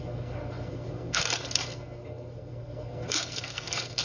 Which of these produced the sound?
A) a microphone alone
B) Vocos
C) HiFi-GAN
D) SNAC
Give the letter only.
D